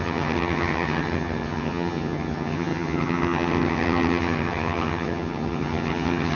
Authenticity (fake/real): fake